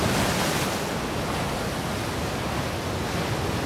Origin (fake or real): real